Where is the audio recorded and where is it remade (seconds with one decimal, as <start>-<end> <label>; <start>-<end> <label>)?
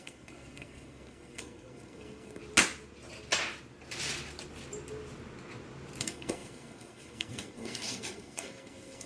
0.0-2.4 remade; 2.4-6.0 recorded; 6.0-9.1 remade